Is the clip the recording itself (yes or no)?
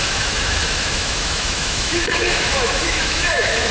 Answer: no